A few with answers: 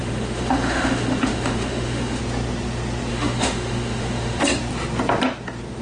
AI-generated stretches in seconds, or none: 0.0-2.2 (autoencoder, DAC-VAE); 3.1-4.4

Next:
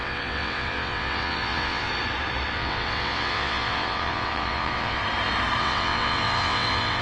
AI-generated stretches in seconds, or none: 0.0-1.9 (vocoder, WaveNeXt); 2.5-5.0; 5.6-7.0